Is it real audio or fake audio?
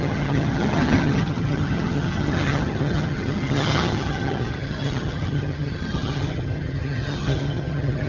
fake